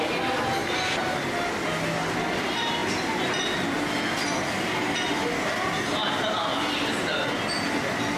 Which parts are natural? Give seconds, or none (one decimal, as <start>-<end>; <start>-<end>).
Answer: 0.0-8.2